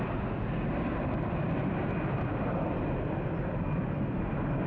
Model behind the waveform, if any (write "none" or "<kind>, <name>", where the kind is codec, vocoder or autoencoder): none